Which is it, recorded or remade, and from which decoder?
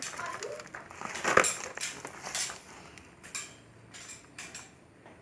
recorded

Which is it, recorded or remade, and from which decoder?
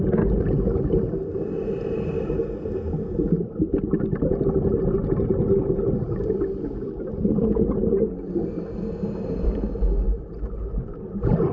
recorded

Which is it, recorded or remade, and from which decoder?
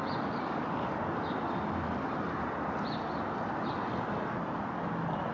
recorded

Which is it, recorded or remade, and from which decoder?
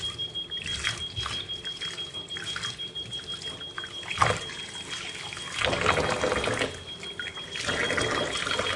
recorded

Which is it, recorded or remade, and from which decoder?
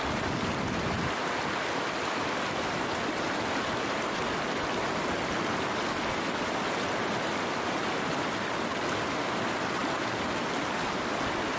recorded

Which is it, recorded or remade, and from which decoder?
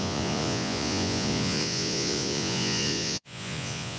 remade, vocoder, Vocos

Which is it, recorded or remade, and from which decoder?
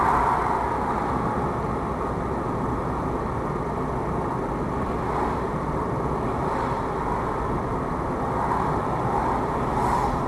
recorded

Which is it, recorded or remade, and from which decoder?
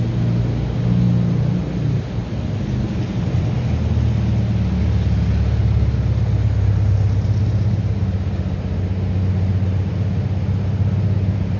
recorded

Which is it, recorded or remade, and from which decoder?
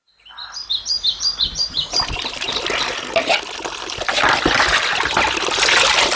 recorded